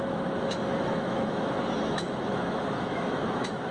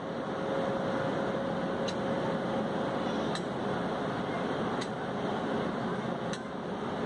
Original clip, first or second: second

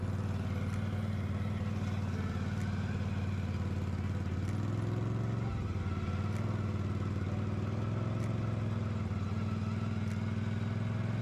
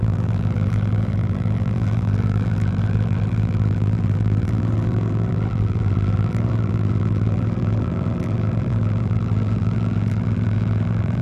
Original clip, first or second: first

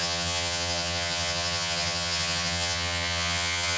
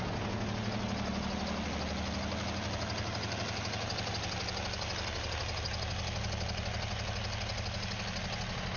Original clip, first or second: second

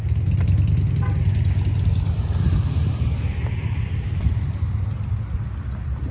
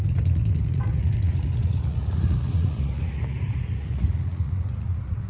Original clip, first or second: first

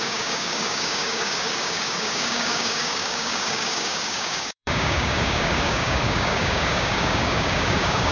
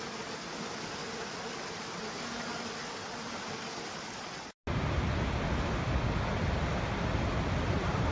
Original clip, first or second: second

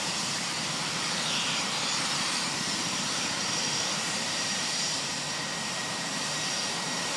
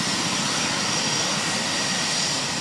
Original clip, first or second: second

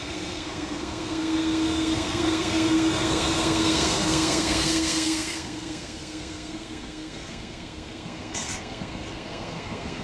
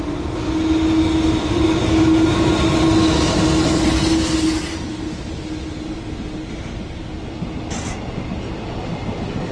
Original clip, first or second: second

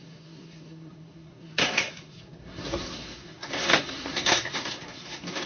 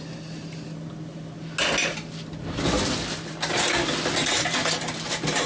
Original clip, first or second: second